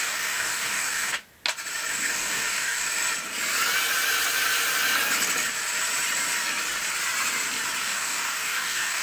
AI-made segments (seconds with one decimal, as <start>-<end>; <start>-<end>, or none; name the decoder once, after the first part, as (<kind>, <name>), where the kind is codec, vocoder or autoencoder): 0.0-1.2 (codec, DAC); 1.9-2.9; 7.8-9.0